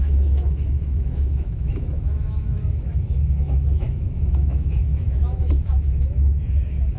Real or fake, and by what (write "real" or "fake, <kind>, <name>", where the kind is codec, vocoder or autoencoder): fake, autoencoder, DAC-VAE